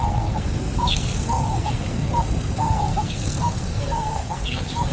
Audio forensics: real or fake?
fake